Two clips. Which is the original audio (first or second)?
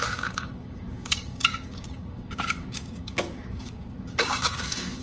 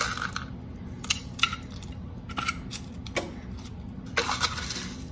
second